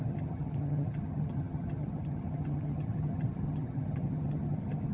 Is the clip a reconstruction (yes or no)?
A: yes